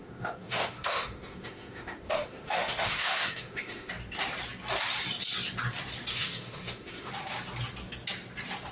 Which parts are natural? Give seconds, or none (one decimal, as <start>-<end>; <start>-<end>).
3.9-6.1; 7.1-8.7